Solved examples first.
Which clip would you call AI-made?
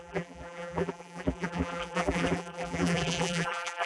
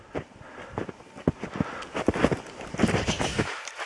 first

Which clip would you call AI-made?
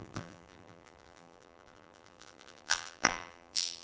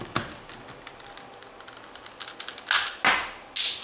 first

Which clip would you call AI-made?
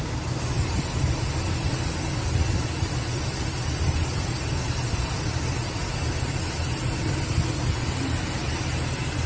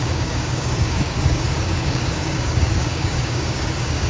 second